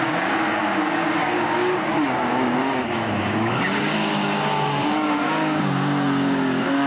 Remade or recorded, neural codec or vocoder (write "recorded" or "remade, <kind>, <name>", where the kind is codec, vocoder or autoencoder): remade, codec, DAC